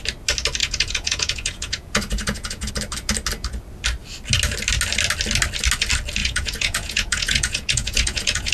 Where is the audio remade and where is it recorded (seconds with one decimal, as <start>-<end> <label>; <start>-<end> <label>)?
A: 0.0-0.6 recorded; 0.6-2.7 remade; 2.7-6.2 recorded; 6.2-8.5 remade